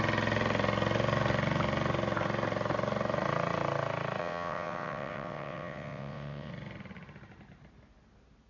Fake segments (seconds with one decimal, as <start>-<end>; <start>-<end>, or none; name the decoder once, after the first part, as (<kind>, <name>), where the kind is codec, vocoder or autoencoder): 4.2-6.5 (vocoder, WaveNeXt)